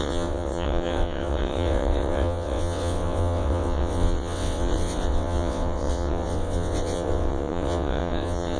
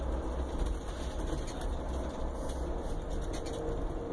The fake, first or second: first